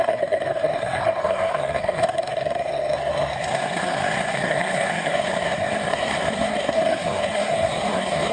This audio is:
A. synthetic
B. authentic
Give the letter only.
A